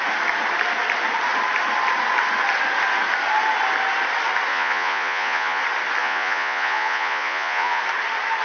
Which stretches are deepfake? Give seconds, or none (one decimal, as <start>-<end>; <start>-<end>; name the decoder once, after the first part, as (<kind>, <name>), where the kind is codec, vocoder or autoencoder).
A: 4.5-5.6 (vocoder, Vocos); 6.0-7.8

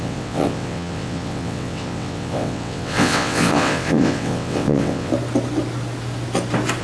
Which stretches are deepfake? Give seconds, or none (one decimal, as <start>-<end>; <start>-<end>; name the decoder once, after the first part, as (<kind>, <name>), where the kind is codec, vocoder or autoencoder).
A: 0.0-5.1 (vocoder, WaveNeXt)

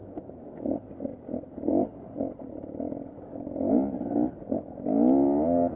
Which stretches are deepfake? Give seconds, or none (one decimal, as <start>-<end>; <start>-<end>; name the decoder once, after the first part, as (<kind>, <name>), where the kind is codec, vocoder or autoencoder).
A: 0.0-0.6 (autoencoder, DAC-VAE)

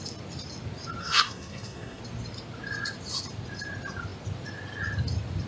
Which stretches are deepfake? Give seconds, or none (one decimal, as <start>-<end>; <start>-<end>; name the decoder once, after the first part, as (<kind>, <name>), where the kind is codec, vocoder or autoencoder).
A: 1.0-2.0 (codec, SNAC)

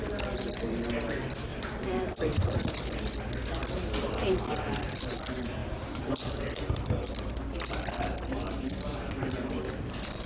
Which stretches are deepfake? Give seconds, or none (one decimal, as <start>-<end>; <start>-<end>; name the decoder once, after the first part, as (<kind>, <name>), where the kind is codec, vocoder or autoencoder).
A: 1.5-2.7 (vocoder, BigVGAN v2); 5.6-6.9

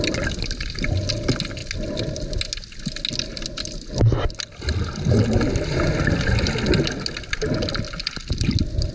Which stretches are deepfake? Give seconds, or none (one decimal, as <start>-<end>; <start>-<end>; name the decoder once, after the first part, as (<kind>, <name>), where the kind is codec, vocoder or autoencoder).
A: none

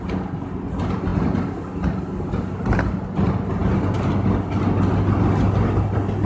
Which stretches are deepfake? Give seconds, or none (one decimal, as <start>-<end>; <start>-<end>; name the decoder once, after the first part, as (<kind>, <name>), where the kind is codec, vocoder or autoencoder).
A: none

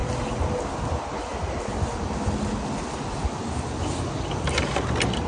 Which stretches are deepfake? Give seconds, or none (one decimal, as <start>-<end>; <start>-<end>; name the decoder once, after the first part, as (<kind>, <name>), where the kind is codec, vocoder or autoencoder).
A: none